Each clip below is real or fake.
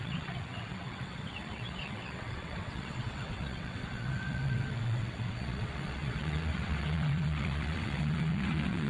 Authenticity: fake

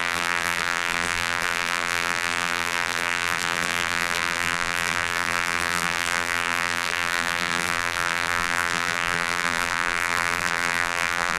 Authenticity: fake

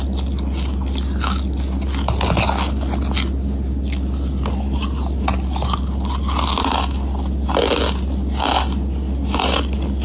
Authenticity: real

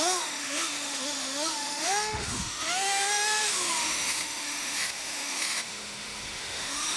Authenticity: fake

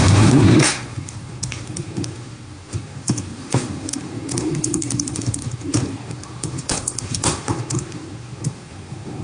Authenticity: fake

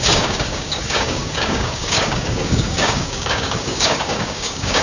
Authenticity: fake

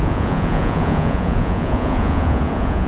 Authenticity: fake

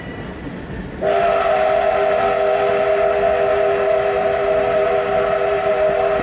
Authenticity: real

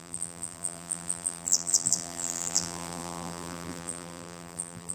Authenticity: fake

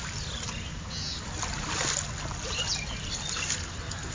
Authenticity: real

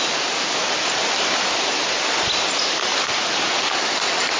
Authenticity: real